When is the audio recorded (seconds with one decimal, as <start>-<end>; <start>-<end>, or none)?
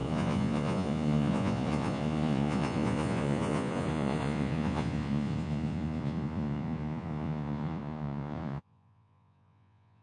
none